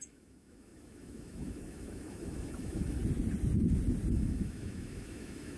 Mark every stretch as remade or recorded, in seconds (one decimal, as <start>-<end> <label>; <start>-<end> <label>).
0.0-3.0 remade; 3.0-4.1 recorded; 4.1-5.6 remade

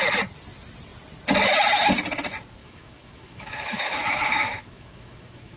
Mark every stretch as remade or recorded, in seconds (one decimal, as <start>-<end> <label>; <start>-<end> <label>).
0.0-2.6 recorded; 2.6-5.6 remade